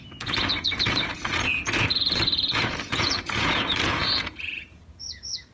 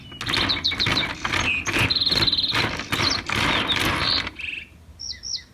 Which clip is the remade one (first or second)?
first